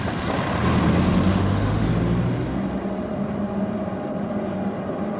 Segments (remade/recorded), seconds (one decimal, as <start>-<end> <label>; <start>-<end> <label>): 0.0-1.3 recorded; 1.3-1.9 remade; 1.9-5.2 recorded